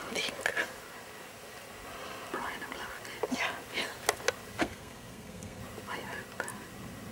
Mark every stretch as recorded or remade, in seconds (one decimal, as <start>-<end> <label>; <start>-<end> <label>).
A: 0.0-4.6 recorded; 4.6-5.6 remade; 5.6-7.1 recorded